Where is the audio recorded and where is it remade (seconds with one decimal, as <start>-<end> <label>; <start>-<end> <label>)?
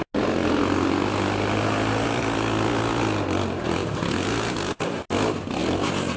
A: 0.0-3.8 recorded; 3.8-5.0 remade; 5.0-5.6 recorded; 5.6-6.2 remade